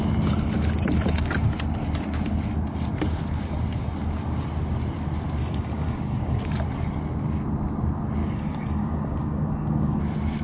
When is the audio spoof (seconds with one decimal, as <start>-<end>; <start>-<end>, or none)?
5.4-6.4; 8.2-10.0